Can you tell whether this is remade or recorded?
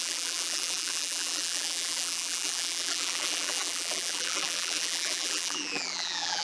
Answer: remade